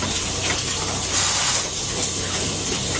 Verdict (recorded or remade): recorded